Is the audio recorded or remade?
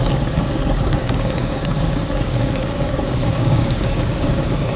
remade